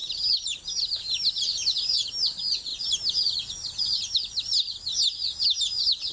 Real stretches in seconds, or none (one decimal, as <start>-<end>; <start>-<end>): 0.0-6.1